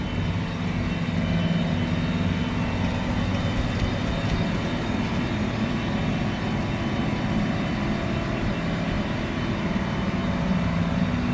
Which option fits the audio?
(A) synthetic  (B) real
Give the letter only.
B